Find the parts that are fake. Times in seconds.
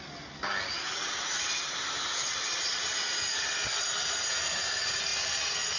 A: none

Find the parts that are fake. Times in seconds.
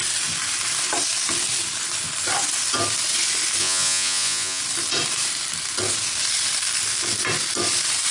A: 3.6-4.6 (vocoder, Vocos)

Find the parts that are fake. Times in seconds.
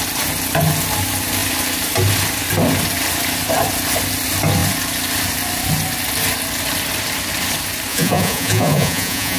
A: 7.9-9.4 (vocoder, Vocos)